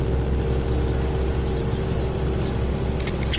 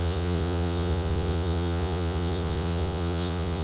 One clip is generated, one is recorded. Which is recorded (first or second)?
first